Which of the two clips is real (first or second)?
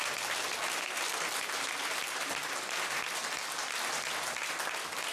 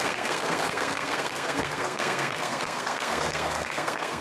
first